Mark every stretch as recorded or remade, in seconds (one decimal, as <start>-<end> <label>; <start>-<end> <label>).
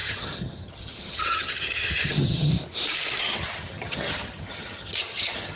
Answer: 0.0-2.5 remade; 2.5-3.2 recorded; 3.2-5.6 remade